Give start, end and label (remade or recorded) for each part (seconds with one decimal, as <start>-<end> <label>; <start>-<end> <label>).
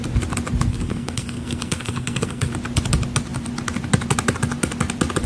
0.0-0.7 recorded; 0.7-2.5 remade; 2.5-5.3 recorded